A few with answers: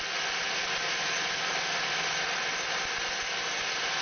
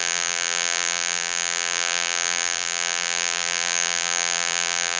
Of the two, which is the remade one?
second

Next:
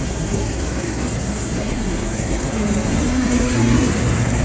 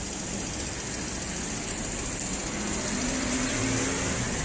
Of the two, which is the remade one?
first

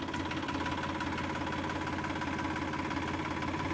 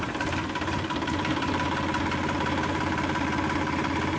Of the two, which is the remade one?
second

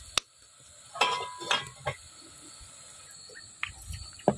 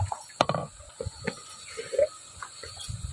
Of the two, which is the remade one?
second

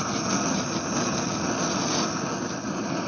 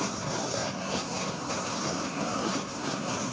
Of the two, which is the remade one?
second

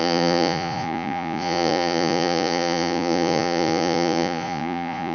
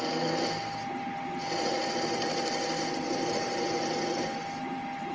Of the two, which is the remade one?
first